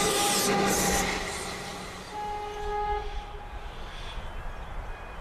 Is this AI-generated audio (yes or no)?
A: no